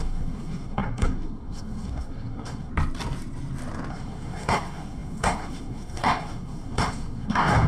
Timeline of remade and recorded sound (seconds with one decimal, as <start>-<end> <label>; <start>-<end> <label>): 0.0-2.7 remade; 2.7-3.9 recorded; 3.9-7.7 remade